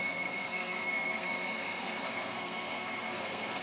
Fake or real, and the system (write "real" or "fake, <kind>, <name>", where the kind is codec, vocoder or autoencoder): fake, codec, SNAC